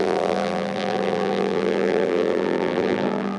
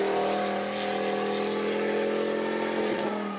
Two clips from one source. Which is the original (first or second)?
second